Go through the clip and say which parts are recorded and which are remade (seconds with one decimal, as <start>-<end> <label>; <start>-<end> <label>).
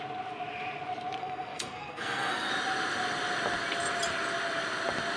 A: 0.0-1.2 recorded; 1.2-2.5 remade; 2.5-5.2 recorded